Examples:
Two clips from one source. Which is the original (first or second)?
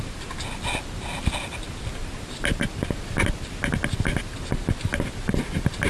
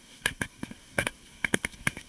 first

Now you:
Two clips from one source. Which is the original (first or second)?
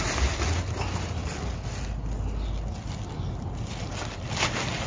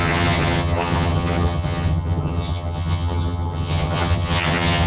first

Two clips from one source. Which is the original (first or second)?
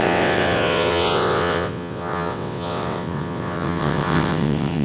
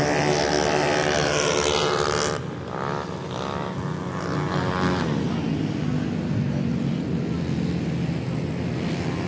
second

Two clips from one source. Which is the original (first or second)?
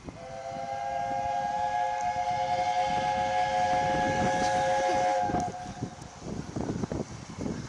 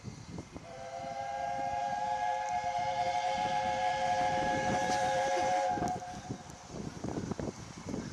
first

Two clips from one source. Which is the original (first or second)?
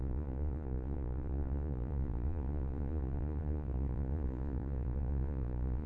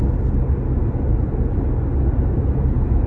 second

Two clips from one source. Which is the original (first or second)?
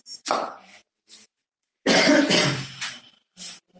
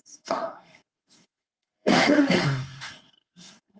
first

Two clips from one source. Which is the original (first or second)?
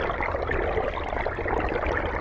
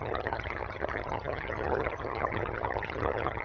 first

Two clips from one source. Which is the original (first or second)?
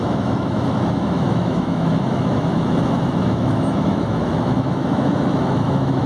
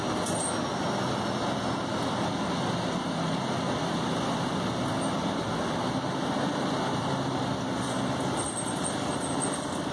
second